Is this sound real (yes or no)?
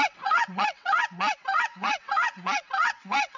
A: no